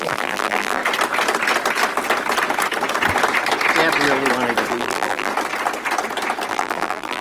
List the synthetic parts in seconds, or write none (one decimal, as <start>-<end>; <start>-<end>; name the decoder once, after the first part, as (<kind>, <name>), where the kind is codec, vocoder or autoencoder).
0.0-0.8 (vocoder, BigVGAN v2); 4.7-5.3; 6.5-7.2